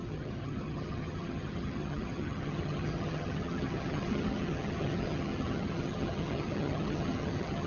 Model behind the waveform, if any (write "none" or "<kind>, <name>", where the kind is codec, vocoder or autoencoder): vocoder, HiFi-GAN